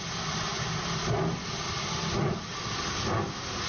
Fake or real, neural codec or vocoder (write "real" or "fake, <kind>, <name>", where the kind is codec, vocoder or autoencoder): real